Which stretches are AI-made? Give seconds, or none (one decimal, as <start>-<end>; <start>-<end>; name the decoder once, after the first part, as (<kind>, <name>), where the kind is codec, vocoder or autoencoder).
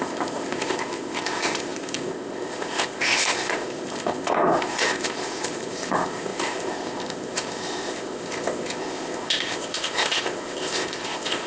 0.0-11.5 (codec, ZipCodec)